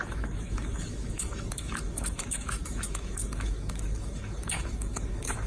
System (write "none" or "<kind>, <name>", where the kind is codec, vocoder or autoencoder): autoencoder, DAC-VAE